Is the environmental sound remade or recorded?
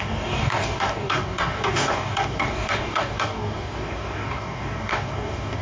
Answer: remade